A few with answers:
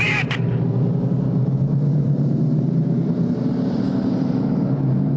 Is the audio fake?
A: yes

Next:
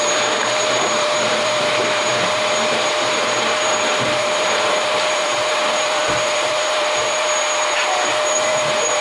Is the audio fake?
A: yes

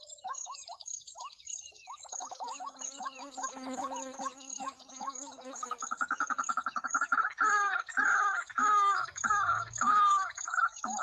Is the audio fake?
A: yes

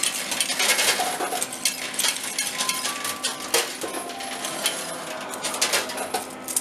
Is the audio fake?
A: no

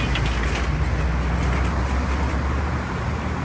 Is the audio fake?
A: no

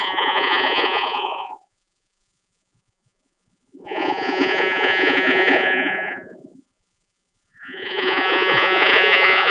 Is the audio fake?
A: yes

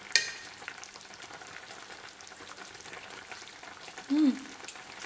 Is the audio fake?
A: no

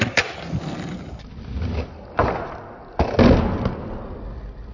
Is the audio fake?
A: no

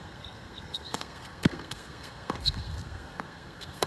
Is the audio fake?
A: yes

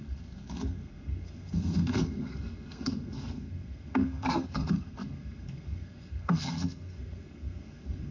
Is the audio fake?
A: yes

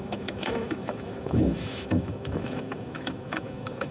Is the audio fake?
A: yes